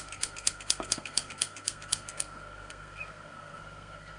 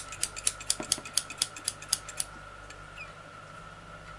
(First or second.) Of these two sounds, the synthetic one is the first